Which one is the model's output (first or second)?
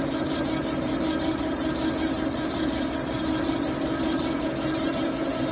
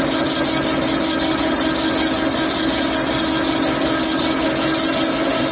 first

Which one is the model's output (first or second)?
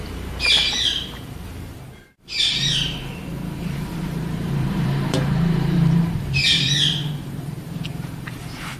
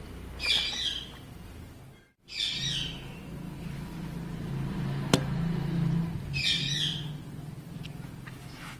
first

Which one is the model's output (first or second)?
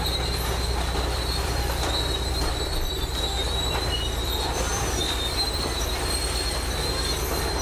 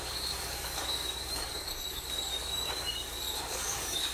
second